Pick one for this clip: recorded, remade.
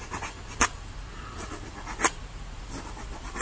recorded